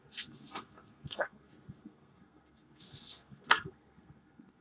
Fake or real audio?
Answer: fake